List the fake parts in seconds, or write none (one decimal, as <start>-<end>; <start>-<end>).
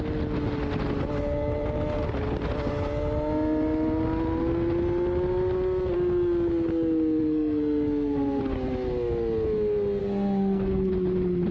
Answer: 7.2-8.4; 10.0-10.9